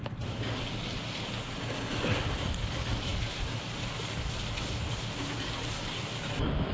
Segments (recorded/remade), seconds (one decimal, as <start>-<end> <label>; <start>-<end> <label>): 0.0-6.7 recorded